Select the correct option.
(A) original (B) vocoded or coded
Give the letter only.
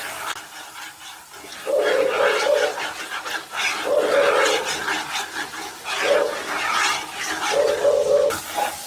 A